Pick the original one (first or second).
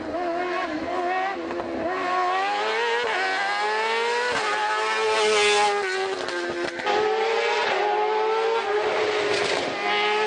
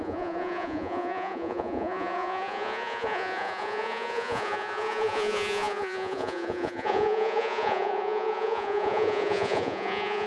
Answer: first